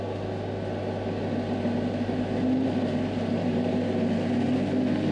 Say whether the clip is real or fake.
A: real